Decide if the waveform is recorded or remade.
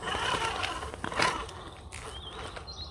recorded